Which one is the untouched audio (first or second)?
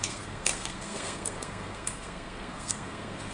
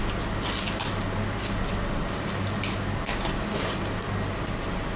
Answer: second